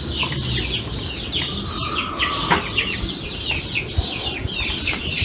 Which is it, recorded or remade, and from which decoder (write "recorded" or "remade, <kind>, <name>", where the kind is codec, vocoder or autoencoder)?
recorded